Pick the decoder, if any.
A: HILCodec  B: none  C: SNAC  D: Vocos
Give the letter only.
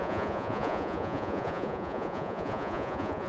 D